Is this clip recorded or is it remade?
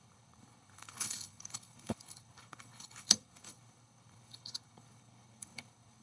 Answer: remade